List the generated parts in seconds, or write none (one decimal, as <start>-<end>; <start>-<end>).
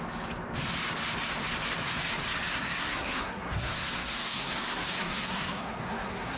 2.5-6.4